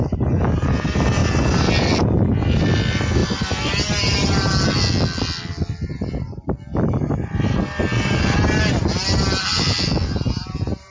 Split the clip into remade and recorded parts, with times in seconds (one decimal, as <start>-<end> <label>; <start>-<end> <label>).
0.0-1.2 recorded; 1.2-1.7 remade; 1.7-9.5 recorded; 9.5-10.9 remade